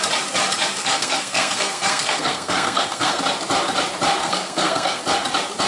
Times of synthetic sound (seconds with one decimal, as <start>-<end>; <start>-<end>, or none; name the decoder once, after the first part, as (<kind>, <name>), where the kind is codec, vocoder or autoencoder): 0.8-3.2 (codec, SNAC); 4.2-5.0